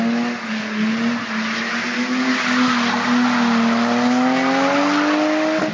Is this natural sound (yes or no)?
yes